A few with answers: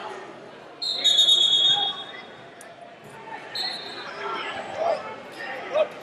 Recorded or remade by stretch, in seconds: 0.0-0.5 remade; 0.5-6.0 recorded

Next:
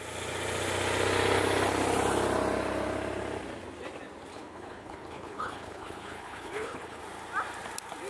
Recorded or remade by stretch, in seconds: 0.0-4.3 recorded; 4.3-7.0 remade; 7.0-8.1 recorded

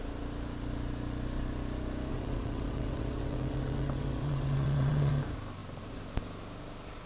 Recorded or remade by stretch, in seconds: 0.0-2.1 recorded; 2.1-5.1 remade; 5.1-7.1 recorded

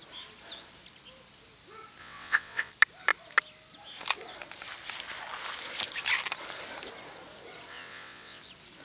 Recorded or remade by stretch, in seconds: 0.0-2.0 recorded; 2.0-2.7 remade; 2.7-7.7 recorded; 7.7-8.4 remade; 8.4-8.8 recorded